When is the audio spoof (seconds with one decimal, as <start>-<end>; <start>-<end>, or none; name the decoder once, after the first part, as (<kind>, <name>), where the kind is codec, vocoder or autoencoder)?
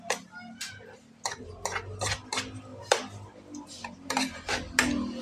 2.7-4.5 (vocoder, BigVGAN v2)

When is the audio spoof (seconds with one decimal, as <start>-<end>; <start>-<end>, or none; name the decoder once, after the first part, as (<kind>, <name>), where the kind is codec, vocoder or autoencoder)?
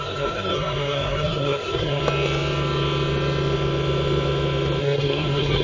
0.0-2.0 (codec, SNAC); 4.8-5.6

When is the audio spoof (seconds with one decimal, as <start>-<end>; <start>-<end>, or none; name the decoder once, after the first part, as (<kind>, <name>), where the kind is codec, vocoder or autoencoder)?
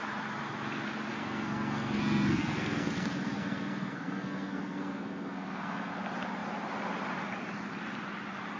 1.1-5.9 (codec, SNAC)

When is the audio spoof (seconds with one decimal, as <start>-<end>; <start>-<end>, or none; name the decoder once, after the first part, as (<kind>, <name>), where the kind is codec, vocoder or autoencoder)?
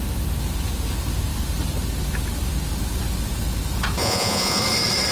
4.0-4.6 (vocoder, Vocos)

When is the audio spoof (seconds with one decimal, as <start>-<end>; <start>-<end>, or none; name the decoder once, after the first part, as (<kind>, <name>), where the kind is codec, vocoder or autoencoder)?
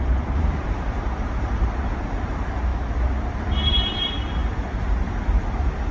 0.0-2.7 (vocoder, BigVGAN v2); 3.4-5.9